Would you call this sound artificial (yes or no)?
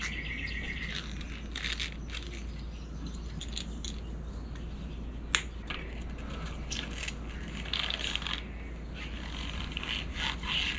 no